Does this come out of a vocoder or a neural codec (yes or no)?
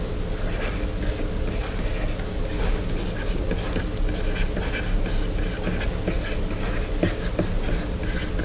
no